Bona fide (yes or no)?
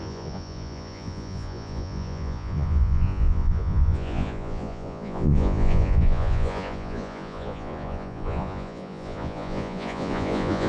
no